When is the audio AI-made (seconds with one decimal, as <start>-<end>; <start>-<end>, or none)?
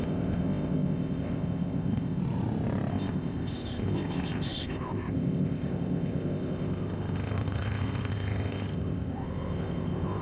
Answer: 0.0-2.2; 2.9-10.2